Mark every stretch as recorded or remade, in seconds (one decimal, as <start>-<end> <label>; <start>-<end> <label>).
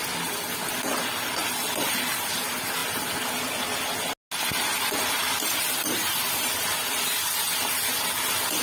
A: 0.0-1.4 recorded; 1.4-2.2 remade; 2.2-5.2 recorded; 5.2-6.8 remade; 6.8-8.6 recorded